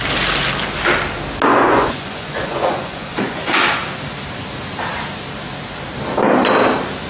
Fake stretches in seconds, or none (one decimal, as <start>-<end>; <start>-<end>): 1.5-3.6